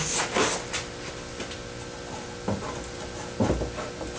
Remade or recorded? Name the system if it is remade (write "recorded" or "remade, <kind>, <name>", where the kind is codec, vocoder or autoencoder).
recorded